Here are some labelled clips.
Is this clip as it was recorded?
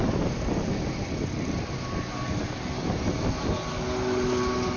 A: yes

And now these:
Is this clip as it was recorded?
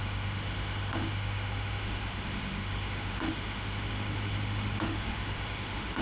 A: no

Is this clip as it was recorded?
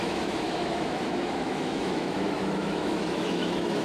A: no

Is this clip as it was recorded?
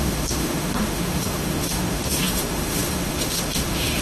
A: no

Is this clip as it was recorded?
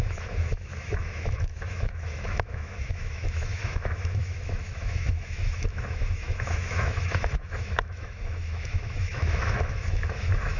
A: no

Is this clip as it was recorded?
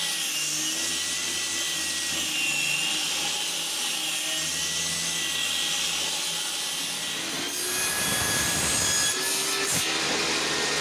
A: yes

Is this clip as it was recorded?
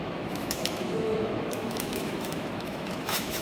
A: no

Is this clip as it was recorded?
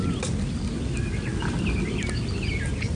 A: yes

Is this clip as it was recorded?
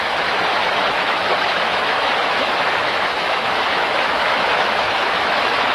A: no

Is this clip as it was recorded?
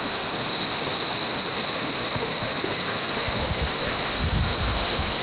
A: no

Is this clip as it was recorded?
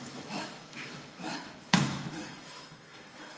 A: no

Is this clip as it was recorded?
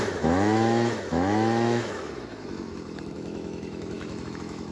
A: no